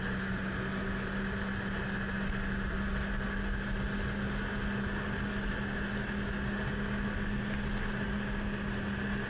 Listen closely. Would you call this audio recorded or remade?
recorded